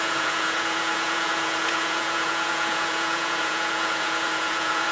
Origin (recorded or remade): remade